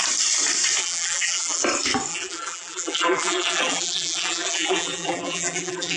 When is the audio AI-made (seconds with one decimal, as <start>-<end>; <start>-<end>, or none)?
0.8-1.6; 2.1-6.0